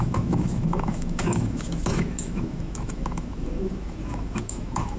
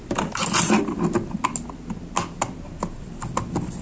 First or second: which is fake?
first